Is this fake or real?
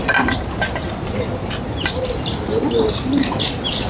real